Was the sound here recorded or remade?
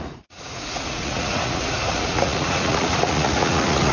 remade